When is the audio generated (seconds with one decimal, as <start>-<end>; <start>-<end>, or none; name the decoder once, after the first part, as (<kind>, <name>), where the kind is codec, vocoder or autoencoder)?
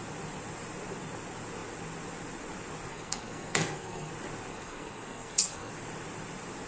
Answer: 2.9-4.1 (codec, SNAC); 4.5-5.7